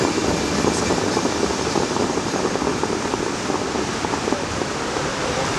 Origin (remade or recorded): recorded